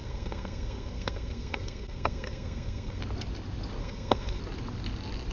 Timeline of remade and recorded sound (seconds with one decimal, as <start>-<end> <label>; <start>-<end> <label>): 0.0-3.0 remade; 3.0-3.8 recorded; 3.8-4.4 remade; 4.4-5.3 recorded